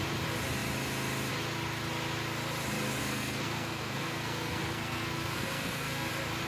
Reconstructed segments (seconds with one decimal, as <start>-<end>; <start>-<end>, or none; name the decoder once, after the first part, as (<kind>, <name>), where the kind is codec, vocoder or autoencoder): 3.0-6.1 (codec, SNAC)

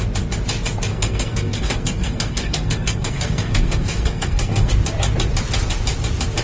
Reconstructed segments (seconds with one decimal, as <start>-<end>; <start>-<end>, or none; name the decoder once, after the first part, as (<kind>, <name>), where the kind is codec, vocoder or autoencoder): 0.9-4.7 (codec, SNAC)

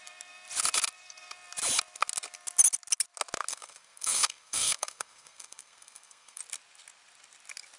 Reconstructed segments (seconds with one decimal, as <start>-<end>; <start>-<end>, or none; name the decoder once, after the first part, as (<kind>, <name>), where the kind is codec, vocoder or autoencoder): 3.5-6.4 (codec, SNAC)

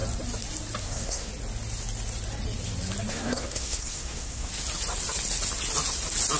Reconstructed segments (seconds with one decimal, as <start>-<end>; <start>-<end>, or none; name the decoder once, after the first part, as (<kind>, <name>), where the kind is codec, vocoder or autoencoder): 0.8-1.3 (codec, SNAC); 3.1-4.5

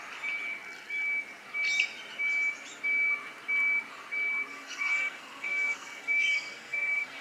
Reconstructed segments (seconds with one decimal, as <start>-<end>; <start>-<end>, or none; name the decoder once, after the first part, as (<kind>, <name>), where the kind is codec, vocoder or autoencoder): 4.5-7.2 (codec, SNAC)

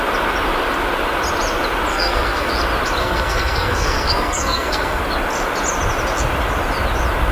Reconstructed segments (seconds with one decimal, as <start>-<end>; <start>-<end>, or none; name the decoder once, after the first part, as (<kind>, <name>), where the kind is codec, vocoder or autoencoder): 1.9-2.5 (codec, SNAC); 3.0-5.0

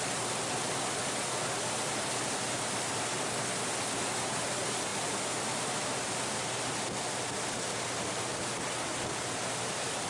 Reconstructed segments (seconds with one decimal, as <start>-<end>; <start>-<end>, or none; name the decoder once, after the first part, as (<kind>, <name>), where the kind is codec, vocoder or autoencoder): none

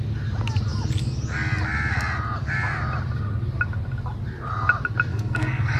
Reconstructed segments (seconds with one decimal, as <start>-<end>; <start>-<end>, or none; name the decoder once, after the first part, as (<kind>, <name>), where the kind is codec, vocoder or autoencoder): 5.1-5.8 (codec, SNAC)